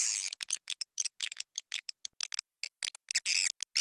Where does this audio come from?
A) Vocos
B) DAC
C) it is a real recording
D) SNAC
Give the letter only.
C